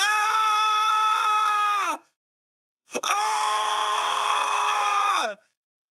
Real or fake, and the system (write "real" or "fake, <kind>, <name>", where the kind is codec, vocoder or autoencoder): fake, codec, SNAC